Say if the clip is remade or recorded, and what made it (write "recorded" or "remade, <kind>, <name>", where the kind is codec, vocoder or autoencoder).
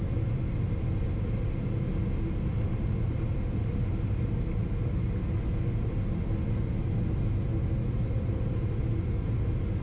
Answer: recorded